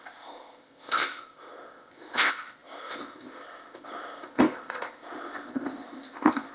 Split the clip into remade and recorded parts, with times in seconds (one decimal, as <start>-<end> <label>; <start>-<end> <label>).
0.0-6.5 remade